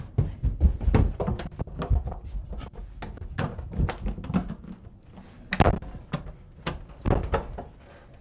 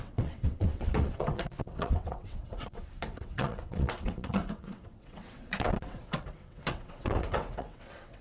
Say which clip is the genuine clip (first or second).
first